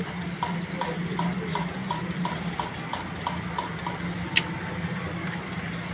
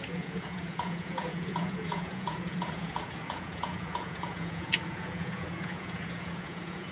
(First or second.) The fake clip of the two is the second